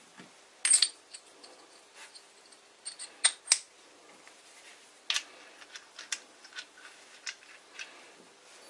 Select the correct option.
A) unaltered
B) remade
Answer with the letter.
A